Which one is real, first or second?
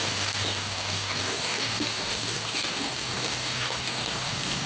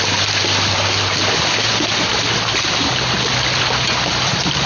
second